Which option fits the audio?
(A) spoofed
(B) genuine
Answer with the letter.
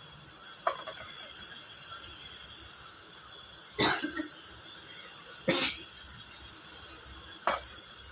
B